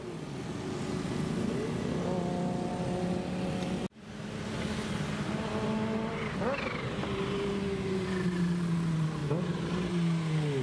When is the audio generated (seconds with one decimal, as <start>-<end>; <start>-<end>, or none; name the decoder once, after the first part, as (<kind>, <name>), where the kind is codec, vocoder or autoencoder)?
none